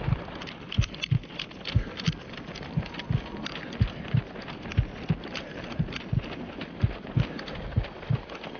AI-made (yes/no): no